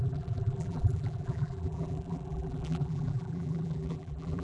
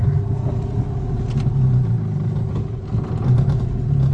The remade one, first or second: first